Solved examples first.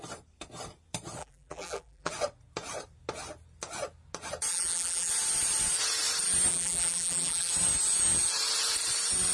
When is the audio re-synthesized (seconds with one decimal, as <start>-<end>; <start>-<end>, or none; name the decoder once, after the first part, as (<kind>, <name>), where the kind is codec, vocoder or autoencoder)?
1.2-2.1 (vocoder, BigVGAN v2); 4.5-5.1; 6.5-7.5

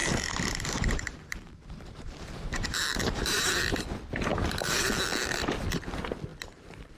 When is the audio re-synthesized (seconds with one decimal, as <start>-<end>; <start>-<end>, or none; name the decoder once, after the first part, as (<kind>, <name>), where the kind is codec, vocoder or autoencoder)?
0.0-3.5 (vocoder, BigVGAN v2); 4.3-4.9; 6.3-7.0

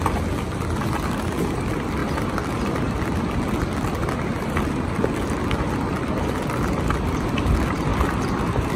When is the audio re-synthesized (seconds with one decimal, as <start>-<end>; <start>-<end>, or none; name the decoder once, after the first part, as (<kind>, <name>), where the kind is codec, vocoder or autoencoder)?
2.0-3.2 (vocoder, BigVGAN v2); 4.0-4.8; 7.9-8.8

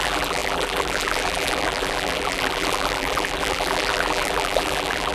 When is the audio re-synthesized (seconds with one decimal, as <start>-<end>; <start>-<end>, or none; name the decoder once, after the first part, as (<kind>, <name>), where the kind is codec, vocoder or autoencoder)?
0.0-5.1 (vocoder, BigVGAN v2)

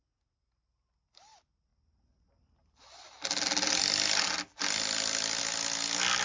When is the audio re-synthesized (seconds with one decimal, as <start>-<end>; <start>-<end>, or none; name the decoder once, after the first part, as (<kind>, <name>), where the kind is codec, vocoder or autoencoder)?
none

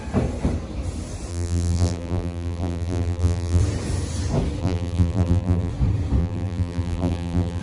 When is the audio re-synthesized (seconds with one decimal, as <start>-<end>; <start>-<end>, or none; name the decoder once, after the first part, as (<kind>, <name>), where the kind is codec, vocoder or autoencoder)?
1.3-3.6 (vocoder, BigVGAN v2); 4.6-5.7; 6.2-7.6

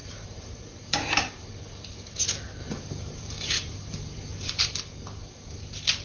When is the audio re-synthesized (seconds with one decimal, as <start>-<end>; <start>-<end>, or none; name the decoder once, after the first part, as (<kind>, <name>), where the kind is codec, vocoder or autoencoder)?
0.0-1.5 (vocoder, BigVGAN v2); 2.6-4.6